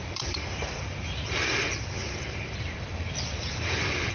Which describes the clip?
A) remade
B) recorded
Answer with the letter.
A